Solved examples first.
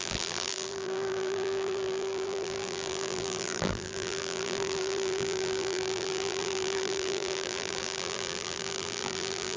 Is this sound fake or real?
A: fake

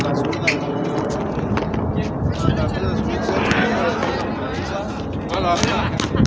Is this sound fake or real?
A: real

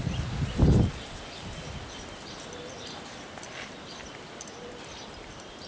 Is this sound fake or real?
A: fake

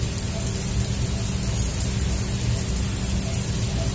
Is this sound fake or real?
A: real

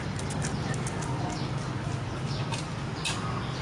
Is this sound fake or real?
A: real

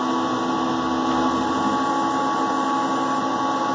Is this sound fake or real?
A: real